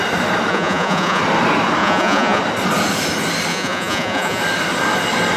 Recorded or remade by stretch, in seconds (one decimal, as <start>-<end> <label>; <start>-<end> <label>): 0.0-0.5 recorded; 0.5-1.2 remade; 1.2-1.8 recorded; 1.8-2.4 remade; 2.4-3.5 recorded; 3.5-4.4 remade; 4.4-5.4 recorded